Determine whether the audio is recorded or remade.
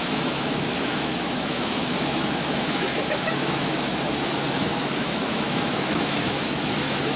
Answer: remade